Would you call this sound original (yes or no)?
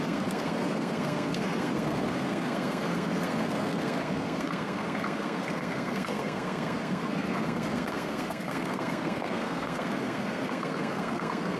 no